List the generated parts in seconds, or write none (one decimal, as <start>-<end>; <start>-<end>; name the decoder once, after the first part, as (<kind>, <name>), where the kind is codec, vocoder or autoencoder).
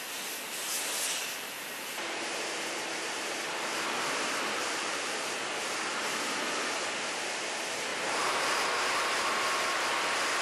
1.2-6.2 (vocoder, BigVGAN v2); 7.9-8.6